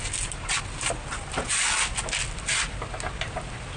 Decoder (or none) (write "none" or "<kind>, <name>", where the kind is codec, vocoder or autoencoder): none